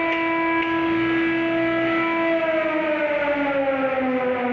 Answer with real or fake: real